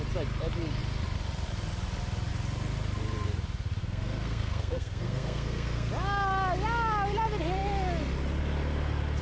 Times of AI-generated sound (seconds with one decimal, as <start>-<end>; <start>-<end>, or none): 3.8-5.9